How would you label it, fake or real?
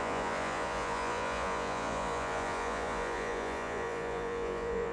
fake